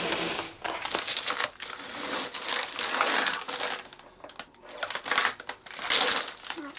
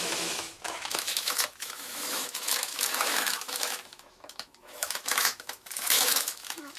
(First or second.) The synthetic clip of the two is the second